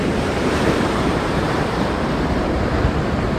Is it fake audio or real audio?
fake